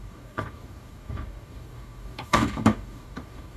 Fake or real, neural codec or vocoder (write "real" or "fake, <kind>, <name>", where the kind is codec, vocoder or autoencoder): fake, codec, DAC